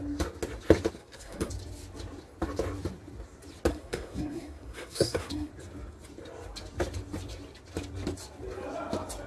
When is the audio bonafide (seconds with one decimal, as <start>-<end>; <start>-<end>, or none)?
0.0-1.0; 1.5-3.7; 5.5-9.3